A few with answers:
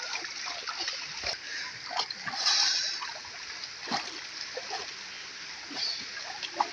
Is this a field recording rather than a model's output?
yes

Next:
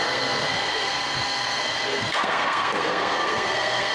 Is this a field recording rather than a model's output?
no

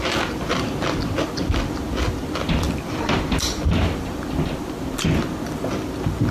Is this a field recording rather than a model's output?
yes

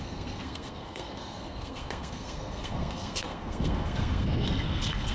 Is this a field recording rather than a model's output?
no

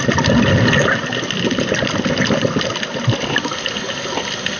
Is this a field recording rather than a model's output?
yes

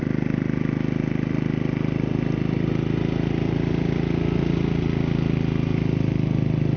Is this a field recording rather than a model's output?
yes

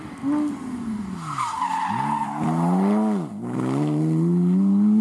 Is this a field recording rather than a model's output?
yes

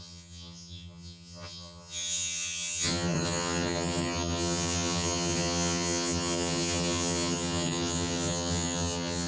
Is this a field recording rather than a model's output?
no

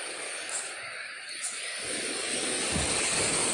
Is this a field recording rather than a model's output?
no